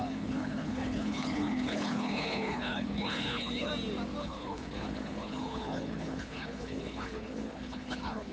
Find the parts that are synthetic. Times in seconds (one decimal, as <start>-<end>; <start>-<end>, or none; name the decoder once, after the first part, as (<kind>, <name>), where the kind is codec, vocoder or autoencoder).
0.0-3.7 (codec, HILCodec); 4.2-8.3